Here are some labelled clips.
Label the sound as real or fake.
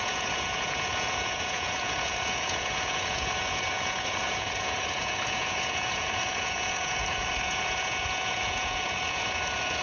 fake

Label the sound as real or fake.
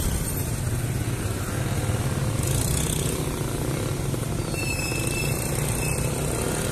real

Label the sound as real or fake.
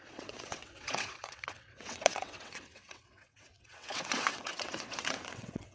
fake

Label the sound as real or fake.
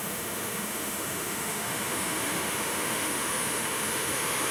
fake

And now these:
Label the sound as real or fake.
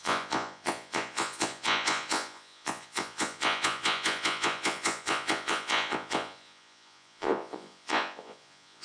fake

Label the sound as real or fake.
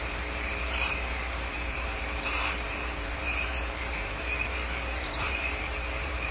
fake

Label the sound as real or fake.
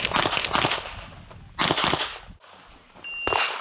real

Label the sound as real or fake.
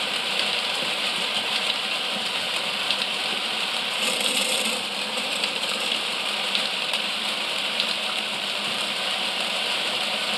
fake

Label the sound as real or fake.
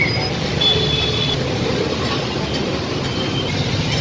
real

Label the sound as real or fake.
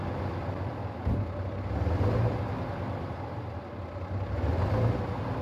real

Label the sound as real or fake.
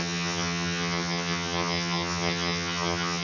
fake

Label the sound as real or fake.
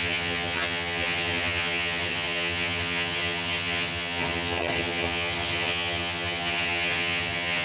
fake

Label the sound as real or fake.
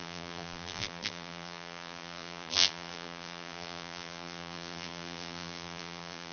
fake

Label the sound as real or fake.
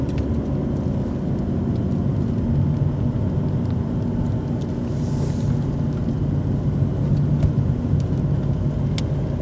real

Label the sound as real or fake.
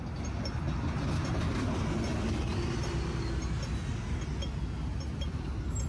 real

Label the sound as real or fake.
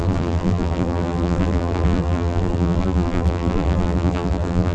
fake